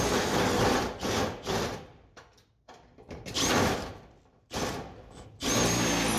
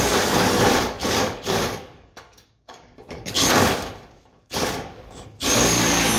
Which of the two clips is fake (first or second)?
second